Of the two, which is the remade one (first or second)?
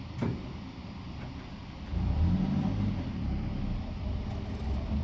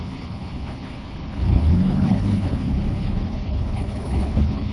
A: second